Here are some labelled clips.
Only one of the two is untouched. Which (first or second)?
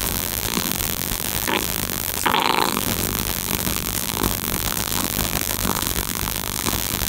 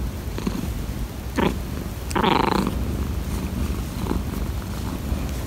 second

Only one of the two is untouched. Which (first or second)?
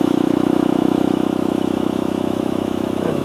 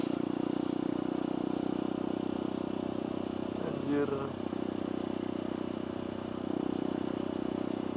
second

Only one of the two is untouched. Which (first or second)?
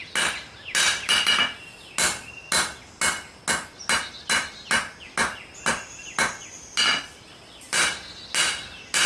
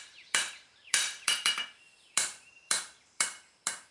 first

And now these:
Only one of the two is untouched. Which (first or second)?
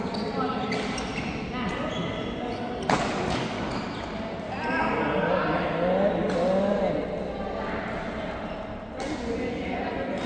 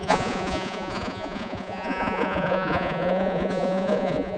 first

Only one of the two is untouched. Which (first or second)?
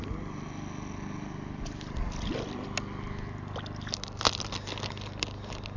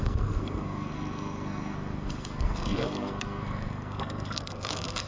first